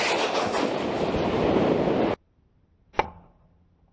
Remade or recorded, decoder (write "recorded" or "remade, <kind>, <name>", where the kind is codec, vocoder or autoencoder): recorded